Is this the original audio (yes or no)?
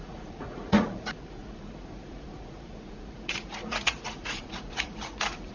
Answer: no